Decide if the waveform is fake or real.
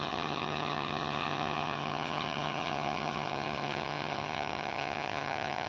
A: fake